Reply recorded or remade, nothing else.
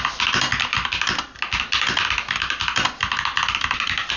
recorded